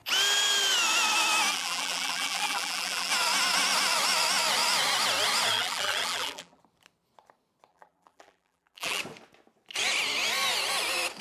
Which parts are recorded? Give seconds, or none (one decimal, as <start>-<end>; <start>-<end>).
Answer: 0.0-1.5; 3.1-5.5; 6.6-7.7; 9.0-11.2